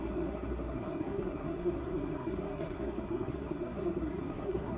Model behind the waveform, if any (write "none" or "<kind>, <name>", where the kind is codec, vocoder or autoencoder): codec, SNAC